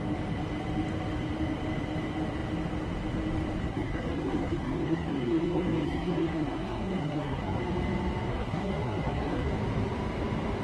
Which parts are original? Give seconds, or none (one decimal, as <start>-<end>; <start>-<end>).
0.0-3.7; 7.6-8.3; 9.5-10.6